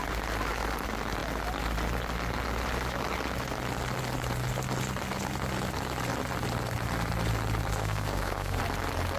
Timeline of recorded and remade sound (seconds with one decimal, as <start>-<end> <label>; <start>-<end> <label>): 0.0-7.8 recorded; 7.8-8.6 remade; 8.6-9.2 recorded